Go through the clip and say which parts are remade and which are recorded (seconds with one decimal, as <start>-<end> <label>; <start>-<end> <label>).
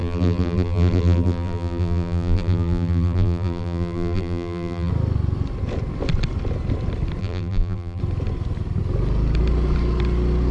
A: 0.0-4.9 remade; 4.9-7.2 recorded; 7.2-8.0 remade; 8.0-10.5 recorded